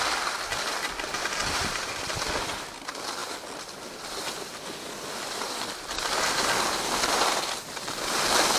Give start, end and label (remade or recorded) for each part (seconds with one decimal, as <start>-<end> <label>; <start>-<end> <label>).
0.0-8.6 recorded